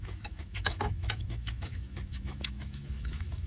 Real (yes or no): no